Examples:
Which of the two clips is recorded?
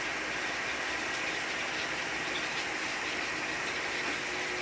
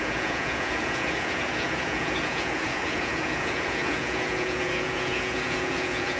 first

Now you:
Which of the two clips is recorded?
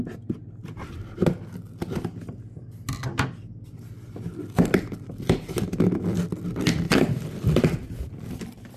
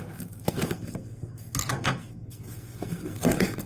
first